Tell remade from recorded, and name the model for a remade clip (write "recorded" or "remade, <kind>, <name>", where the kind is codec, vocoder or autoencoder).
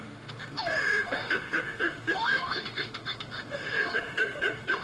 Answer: remade, autoencoder, DAC-VAE